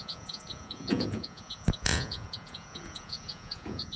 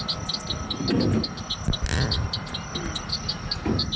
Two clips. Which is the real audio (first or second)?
second